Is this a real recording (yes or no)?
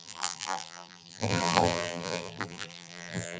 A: no